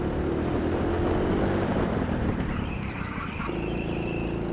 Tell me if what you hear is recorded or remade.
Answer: recorded